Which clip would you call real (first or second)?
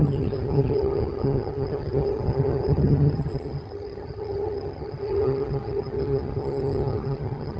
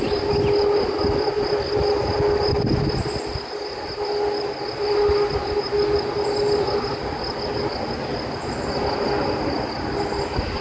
second